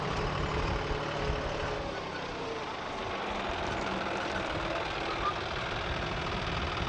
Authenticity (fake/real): real